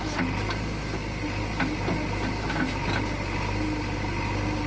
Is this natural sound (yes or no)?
yes